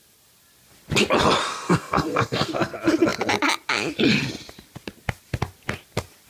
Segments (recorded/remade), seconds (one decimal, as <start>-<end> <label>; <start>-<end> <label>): 0.0-1.4 recorded; 1.4-2.5 remade; 2.5-6.3 recorded